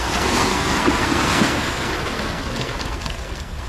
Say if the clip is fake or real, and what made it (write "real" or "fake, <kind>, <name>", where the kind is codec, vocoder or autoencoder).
fake, codec, SNAC